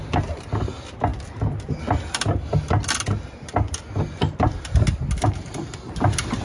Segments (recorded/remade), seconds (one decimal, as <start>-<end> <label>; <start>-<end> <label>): 0.0-6.4 recorded